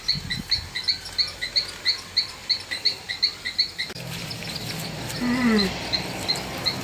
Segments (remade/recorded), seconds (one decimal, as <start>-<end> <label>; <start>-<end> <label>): 0.0-6.8 recorded